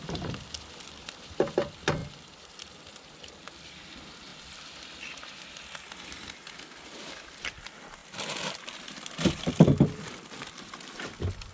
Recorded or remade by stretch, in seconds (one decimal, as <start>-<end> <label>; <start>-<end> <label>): 0.0-2.0 remade; 2.0-3.5 recorded; 3.5-4.3 remade; 4.3-7.2 recorded; 7.2-8.0 remade; 8.0-8.6 recorded; 8.6-11.5 remade